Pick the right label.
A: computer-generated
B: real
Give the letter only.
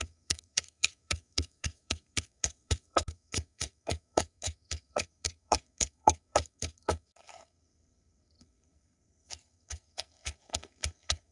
A